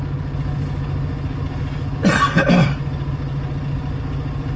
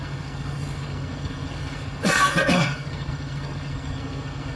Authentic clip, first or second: first